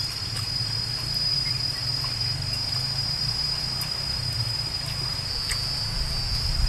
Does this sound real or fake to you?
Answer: real